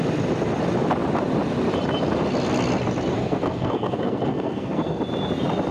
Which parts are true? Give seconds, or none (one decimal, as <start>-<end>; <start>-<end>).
0.0-3.1; 5.0-5.7